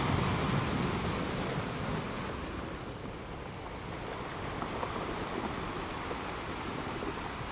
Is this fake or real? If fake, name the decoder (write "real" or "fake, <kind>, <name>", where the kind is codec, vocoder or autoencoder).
real